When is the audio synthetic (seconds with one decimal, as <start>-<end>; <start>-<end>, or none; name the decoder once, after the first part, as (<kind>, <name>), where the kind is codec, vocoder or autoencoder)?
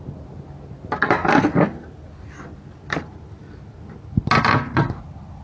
none